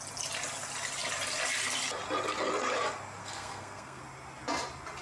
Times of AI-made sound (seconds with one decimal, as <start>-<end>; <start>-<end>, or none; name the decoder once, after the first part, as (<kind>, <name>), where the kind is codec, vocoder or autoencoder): 3.2-4.0 (codec, SNAC)